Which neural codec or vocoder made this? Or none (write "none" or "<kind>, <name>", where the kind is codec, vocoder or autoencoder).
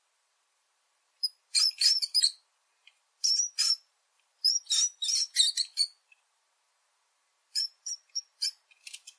vocoder, BigVGAN v2